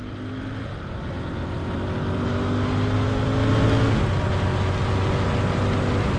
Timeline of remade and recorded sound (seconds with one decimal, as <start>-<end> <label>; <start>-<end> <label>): 0.0-6.2 recorded